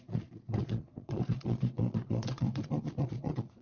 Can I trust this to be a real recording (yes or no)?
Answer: no